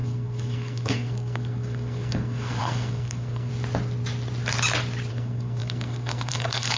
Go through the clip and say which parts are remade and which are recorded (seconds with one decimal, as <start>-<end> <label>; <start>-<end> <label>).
0.0-3.5 remade; 3.5-5.1 recorded; 5.1-6.8 remade